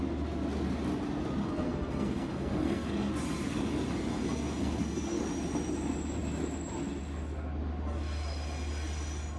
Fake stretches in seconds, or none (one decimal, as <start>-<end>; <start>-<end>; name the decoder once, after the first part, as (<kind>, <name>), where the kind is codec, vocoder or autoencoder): 1.4-3.1 (codec, SNAC); 4.1-5.2